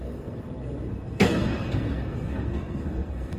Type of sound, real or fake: fake